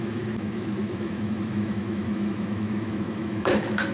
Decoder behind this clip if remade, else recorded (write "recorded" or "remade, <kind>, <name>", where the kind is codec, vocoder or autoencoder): remade, autoencoder, DAC-VAE